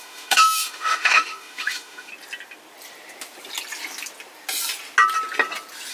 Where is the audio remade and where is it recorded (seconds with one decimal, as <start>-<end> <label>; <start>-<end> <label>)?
0.0-2.1 remade; 2.1-5.9 recorded